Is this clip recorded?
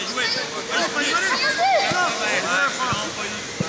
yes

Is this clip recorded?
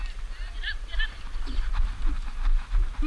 no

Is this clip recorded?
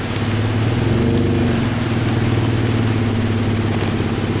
yes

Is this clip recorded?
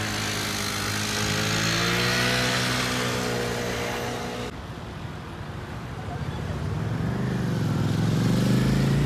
yes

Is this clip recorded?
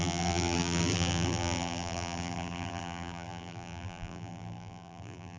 no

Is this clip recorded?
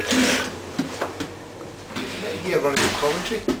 yes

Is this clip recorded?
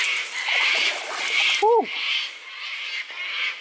yes